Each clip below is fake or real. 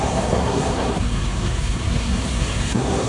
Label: fake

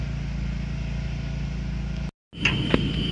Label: real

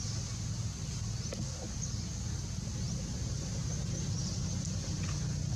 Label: real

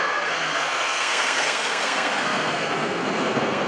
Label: fake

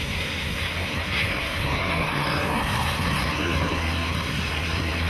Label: fake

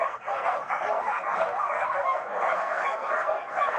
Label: fake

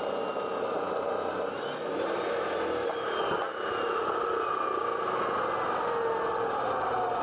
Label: real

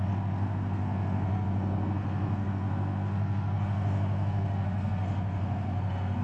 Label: fake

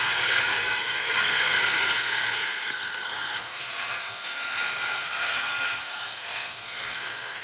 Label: fake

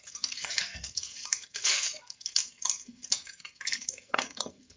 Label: fake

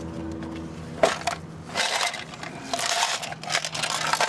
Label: real